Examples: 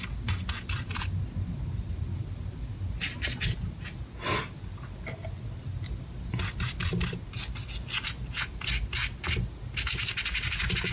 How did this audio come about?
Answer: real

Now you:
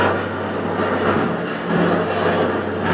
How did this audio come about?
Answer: real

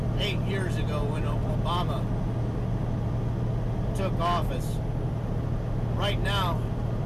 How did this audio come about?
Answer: real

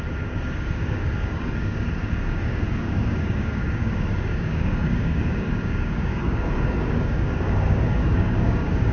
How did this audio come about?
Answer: fake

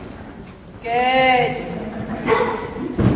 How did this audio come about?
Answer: real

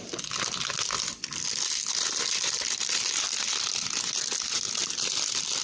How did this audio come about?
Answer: real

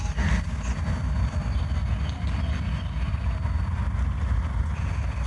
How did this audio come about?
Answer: real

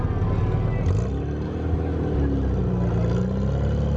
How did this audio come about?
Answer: real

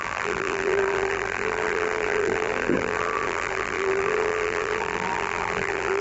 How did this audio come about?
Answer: fake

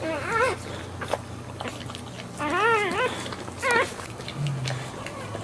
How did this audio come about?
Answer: real